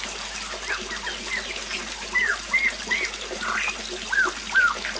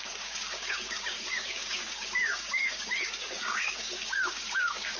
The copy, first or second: second